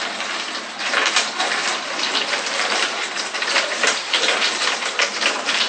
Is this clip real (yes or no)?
no